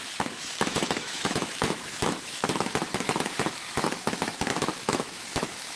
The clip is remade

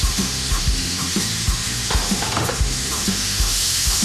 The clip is remade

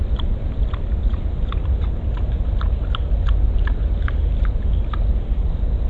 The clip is recorded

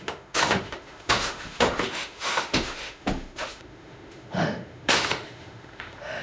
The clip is remade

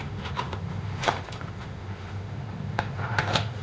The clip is remade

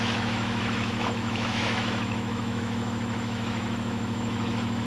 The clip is remade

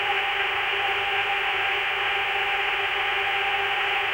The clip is remade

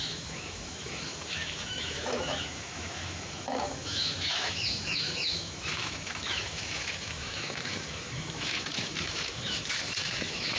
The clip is remade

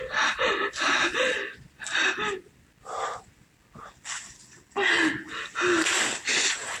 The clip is recorded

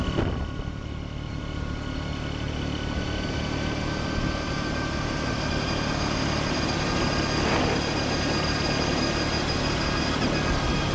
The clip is recorded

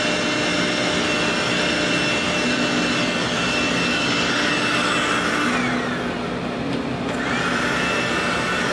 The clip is recorded